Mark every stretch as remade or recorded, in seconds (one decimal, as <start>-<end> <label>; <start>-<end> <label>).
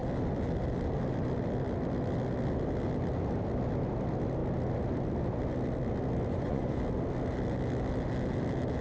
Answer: 0.0-6.3 recorded; 6.3-6.8 remade; 6.8-8.8 recorded